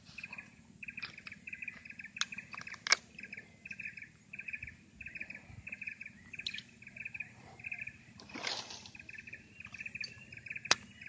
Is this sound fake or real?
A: real